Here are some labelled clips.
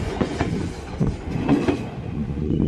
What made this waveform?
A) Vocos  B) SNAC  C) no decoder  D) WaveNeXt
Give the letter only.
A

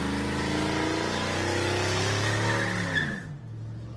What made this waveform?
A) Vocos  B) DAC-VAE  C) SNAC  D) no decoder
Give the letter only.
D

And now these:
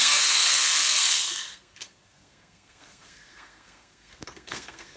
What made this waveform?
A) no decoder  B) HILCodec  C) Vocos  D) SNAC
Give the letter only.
D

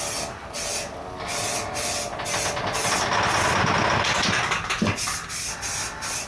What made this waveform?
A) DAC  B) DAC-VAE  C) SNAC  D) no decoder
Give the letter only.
D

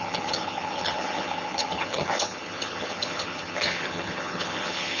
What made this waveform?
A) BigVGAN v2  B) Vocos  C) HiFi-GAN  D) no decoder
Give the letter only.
C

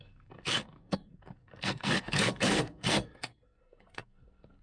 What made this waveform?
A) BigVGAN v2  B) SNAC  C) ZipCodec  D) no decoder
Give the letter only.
B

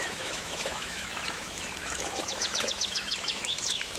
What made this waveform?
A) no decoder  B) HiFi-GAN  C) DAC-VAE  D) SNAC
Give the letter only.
C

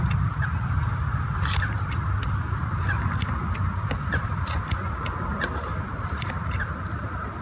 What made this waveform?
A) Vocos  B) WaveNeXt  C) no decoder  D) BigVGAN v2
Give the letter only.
C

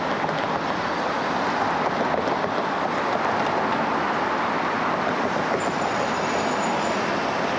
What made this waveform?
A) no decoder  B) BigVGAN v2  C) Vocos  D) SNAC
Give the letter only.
A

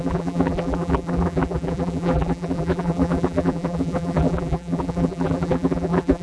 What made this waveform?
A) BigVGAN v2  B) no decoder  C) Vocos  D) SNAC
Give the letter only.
A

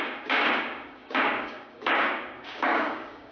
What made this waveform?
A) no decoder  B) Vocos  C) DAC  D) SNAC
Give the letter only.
C